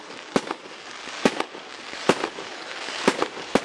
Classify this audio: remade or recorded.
remade